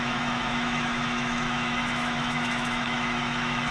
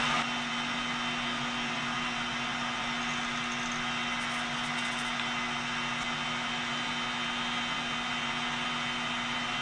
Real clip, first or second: second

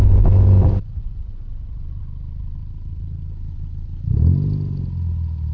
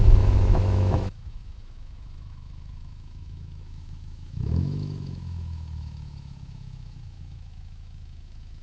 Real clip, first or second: first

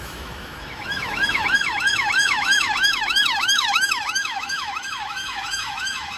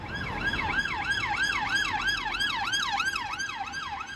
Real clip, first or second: second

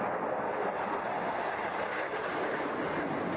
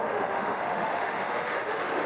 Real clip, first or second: first